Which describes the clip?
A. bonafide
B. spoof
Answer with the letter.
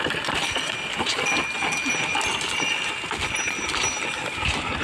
A